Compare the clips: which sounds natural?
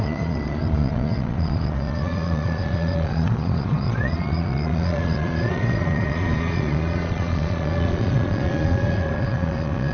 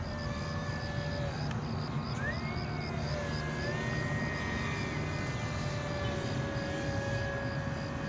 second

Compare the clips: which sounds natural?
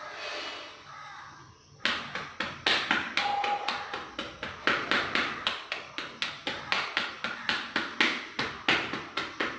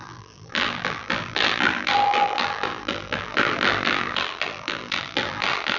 first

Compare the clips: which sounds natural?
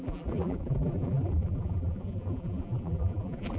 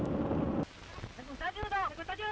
second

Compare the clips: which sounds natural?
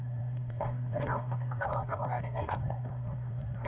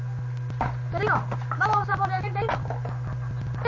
second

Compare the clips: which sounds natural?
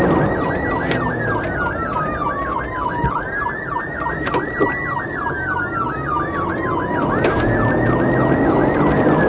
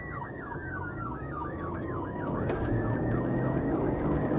first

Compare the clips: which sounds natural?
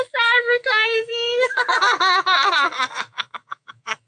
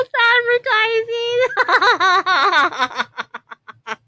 second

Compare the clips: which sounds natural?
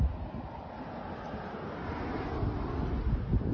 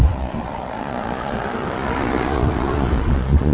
first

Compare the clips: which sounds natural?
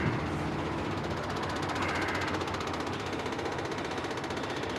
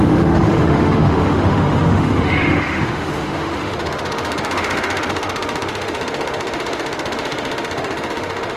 first